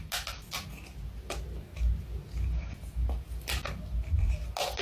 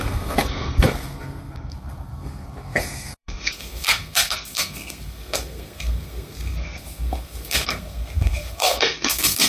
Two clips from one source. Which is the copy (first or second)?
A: second